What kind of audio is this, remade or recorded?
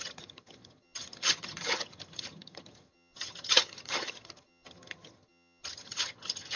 remade